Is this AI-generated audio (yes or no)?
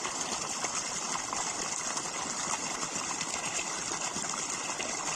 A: no